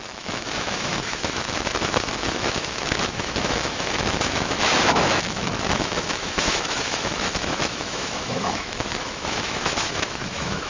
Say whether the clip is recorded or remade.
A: remade